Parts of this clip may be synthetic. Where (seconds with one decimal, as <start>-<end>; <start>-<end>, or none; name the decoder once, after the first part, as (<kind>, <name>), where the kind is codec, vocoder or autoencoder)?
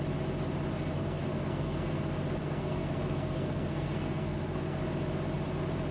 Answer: 0.9-2.0 (codec, SNAC); 2.4-4.8